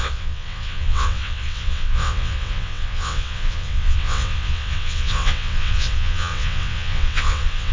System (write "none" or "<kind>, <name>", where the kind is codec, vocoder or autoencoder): vocoder, WaveNeXt